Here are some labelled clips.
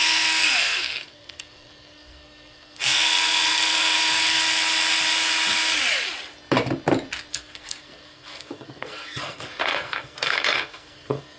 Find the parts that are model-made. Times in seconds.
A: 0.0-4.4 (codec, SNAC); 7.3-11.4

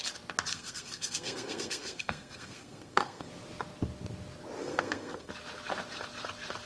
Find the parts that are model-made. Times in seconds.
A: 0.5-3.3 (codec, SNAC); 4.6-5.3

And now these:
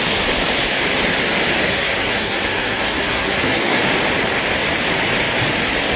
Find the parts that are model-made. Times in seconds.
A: 1.7-3.8 (codec, SNAC)

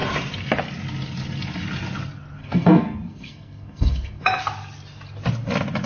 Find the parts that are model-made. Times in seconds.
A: 2.4-4.2 (codec, SNAC)

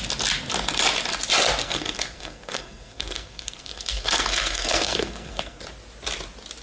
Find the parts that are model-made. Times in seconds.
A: 1.6-5.6 (codec, SNAC)

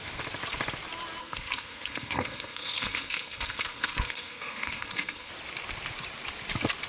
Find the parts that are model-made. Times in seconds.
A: 1.2-5.3 (codec, SNAC)

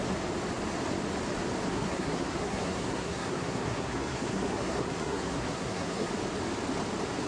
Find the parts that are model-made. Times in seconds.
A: 1.7-6.1 (codec, SNAC)

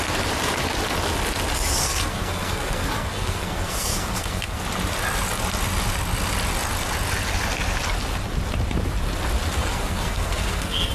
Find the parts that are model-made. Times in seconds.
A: 1.8-4.6 (codec, SNAC); 9.6-10.9